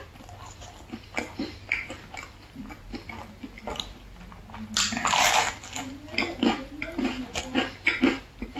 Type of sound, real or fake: real